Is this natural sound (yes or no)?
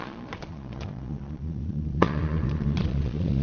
no